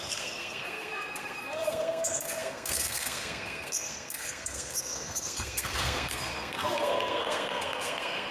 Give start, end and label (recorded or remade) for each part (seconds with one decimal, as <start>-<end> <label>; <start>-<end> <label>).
0.0-8.3 remade